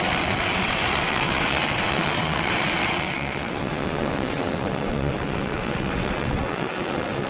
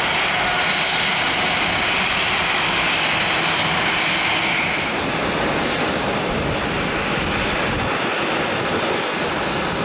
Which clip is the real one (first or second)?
second